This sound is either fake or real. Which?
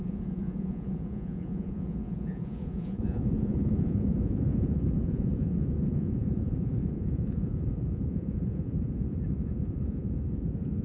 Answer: fake